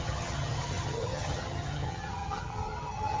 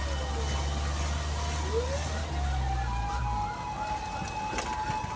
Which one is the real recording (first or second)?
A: second